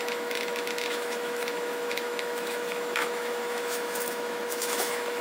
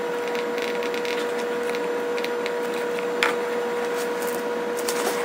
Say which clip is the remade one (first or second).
first